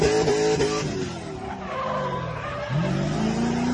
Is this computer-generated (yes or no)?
no